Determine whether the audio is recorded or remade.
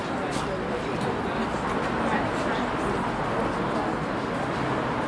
recorded